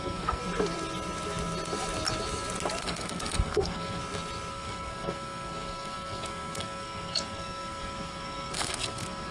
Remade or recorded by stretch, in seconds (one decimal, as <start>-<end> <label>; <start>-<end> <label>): 0.0-0.4 remade; 0.4-2.8 recorded; 2.8-4.0 remade; 4.0-4.5 recorded; 4.5-9.3 remade